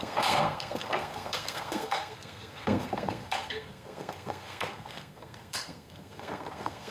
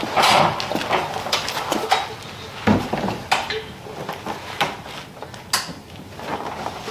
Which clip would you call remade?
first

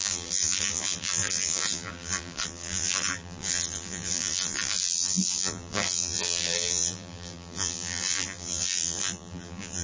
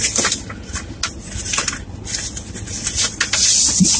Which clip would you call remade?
first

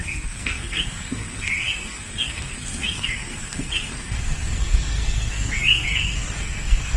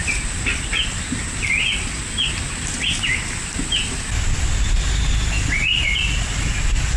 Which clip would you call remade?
first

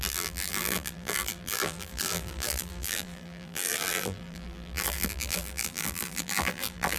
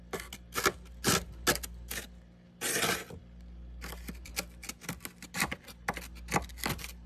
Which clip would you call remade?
first